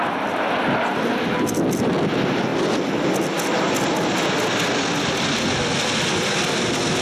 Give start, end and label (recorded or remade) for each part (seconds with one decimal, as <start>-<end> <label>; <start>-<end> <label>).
0.0-7.0 recorded